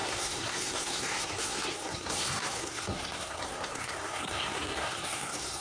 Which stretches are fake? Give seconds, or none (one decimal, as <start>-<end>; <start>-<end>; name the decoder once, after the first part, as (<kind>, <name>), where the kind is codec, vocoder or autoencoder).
0.0-5.6 (codec, SNAC)